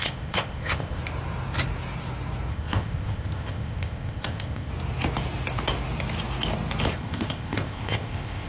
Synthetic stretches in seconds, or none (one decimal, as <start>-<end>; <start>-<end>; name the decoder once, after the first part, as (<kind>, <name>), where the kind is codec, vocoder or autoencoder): 0.0-1.0 (codec, ZipCodec); 2.5-4.7; 6.9-8.5